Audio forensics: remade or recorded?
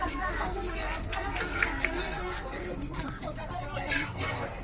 remade